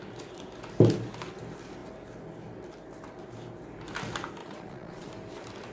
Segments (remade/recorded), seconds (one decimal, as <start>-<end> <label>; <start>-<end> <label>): 0.0-4.4 recorded; 4.4-5.1 remade; 5.1-5.7 recorded